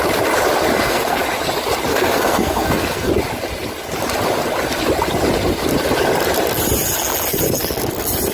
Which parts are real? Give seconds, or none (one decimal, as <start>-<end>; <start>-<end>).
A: 0.0-0.7; 1.2-1.9; 3.1-8.3